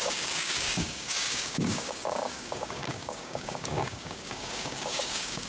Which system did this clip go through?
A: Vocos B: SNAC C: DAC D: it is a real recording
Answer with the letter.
C